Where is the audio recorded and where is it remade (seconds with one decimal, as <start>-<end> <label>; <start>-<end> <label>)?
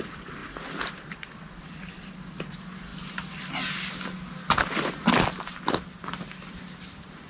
0.0-7.3 recorded